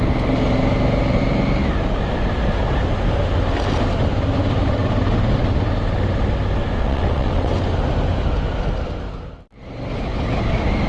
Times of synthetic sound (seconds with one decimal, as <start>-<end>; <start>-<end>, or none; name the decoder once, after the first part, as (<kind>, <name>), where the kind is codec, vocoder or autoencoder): 6.8-7.5 (vocoder, WaveNeXt)